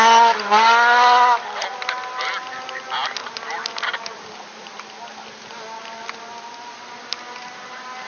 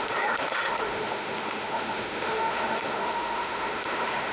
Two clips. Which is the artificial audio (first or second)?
second